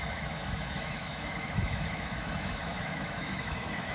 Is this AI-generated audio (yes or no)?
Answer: yes